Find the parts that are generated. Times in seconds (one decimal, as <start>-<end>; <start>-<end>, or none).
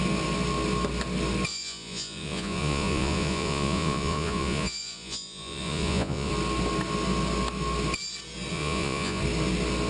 1.5-6.3; 8.5-9.2